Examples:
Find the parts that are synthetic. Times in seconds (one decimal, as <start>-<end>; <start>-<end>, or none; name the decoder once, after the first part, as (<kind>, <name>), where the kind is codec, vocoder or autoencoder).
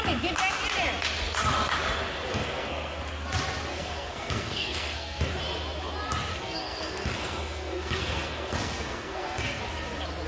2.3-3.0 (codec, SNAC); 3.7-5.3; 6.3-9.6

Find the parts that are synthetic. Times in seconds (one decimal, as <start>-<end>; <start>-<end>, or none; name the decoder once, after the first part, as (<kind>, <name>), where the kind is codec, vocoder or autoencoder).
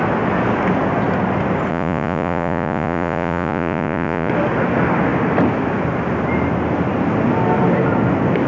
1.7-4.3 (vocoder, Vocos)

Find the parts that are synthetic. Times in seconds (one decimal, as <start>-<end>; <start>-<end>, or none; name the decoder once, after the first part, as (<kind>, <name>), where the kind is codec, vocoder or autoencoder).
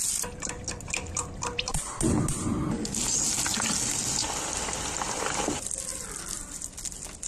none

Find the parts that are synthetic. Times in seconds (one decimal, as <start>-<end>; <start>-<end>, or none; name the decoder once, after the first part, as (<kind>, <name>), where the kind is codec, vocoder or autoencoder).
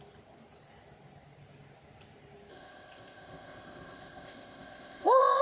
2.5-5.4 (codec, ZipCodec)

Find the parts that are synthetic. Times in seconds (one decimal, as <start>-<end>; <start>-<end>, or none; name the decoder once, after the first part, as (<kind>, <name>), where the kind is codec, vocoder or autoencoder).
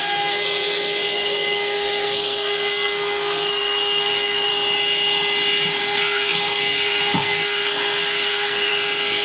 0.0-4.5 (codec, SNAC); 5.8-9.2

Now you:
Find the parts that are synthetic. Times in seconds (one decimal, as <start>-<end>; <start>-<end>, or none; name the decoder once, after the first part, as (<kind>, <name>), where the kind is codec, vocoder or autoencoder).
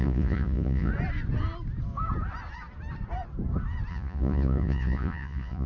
0.0-0.9 (vocoder, Vocos); 3.9-5.7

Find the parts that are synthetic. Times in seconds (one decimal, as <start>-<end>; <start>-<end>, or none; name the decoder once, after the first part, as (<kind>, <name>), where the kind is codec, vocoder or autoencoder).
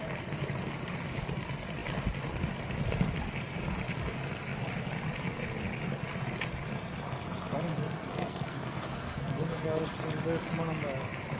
7.7-9.8 (codec, SNAC)